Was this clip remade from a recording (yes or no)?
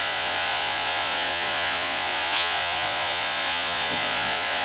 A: yes